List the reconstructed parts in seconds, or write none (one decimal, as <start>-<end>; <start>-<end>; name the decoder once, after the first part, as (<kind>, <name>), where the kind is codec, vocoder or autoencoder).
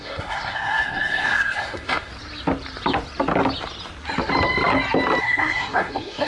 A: 0.0-2.1 (codec, SNAC); 5.2-6.3